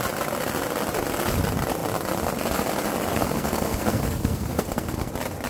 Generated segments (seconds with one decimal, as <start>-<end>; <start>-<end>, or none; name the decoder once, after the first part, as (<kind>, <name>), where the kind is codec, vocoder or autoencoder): 3.1-5.1 (codec, SNAC)